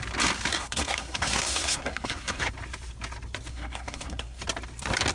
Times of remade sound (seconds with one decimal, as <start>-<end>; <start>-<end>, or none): 0.5-2.5; 3.5-4.4